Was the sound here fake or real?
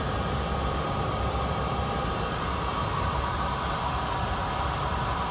real